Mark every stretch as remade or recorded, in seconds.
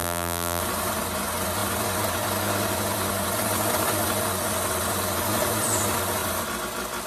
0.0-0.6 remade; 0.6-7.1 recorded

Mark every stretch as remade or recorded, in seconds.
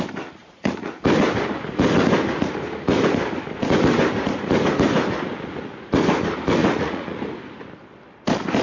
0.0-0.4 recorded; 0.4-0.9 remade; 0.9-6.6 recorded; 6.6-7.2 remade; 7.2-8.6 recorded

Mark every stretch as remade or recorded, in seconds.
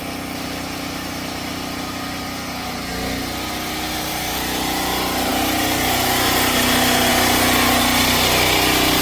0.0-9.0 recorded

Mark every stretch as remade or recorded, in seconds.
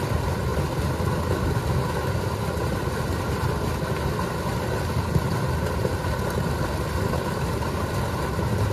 0.0-8.7 recorded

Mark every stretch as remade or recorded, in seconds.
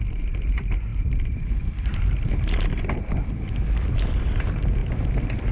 0.0-0.9 recorded; 0.9-4.2 remade; 4.2-5.5 recorded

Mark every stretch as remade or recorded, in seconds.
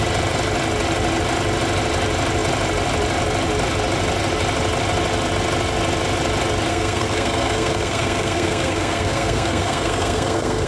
0.0-6.7 recorded; 6.7-10.7 remade